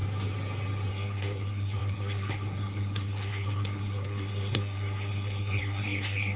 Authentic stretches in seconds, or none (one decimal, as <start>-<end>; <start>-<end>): 0.0-0.9

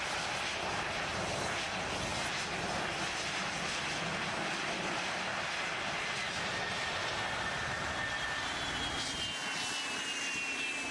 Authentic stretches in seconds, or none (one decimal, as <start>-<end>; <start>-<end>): 0.0-10.9

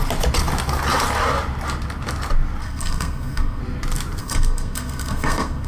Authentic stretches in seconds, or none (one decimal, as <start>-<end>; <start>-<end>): 0.0-2.6; 3.6-4.2

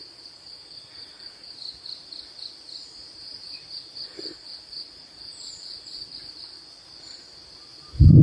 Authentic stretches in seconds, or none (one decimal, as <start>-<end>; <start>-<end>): 0.0-8.2

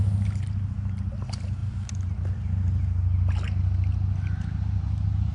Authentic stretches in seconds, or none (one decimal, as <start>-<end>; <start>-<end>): 0.0-5.3

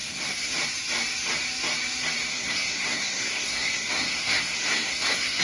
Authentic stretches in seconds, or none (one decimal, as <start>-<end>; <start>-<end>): 0.5-2.3